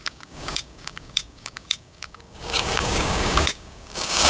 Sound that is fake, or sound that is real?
fake